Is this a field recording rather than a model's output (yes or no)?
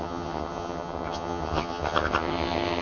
no